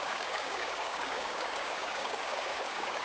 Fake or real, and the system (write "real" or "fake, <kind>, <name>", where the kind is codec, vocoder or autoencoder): fake, codec, DAC